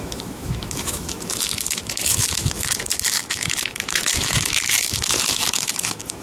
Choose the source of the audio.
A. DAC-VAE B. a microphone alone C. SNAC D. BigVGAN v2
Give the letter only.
A